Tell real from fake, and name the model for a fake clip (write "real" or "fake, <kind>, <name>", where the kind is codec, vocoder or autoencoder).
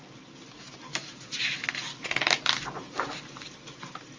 real